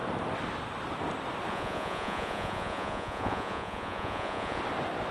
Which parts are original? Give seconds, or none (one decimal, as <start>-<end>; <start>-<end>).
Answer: 0.0-1.5; 4.6-5.1